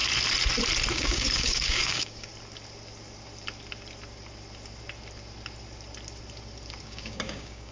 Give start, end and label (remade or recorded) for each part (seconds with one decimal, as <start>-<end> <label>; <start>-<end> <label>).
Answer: 0.0-0.9 recorded; 0.9-2.3 remade; 2.3-6.8 recorded; 6.8-7.7 remade